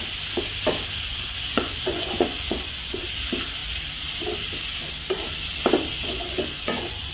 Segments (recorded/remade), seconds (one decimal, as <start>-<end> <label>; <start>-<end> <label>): 0.0-1.1 recorded; 1.1-3.0 remade; 3.0-5.9 recorded; 5.9-7.1 remade